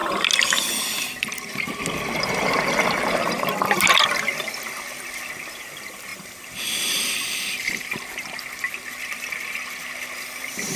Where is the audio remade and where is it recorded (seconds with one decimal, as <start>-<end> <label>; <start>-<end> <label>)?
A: 0.0-10.8 recorded